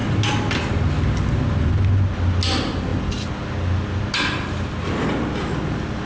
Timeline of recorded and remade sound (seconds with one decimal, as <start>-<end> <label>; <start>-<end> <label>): 0.0-6.1 recorded